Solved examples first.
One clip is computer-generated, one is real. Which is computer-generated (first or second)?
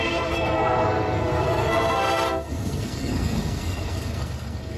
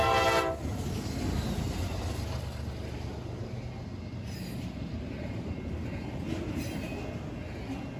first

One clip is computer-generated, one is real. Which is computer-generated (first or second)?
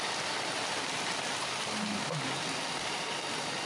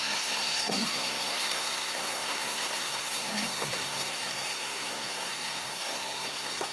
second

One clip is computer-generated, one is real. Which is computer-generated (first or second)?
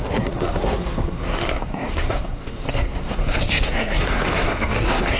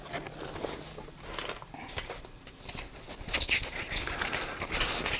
first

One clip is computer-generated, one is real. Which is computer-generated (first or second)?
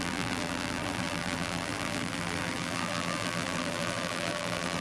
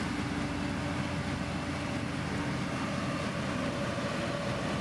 first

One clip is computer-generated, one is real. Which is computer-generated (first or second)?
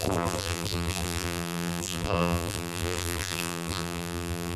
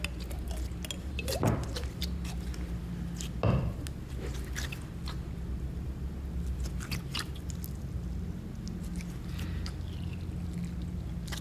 first